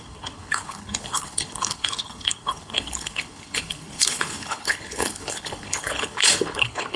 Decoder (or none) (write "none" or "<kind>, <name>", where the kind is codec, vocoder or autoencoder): codec, HILCodec